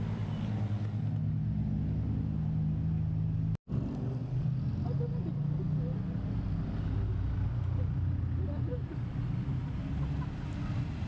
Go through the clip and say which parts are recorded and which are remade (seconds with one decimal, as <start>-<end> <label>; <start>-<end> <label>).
0.0-11.1 recorded